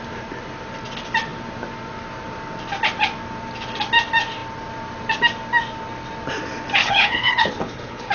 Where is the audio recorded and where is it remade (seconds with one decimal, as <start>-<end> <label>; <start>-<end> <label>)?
0.0-6.8 recorded; 6.8-8.1 remade